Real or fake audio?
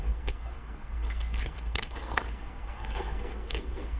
fake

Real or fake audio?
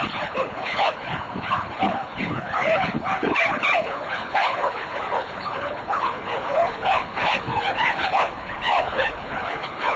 fake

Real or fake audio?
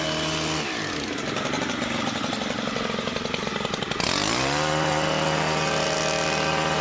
real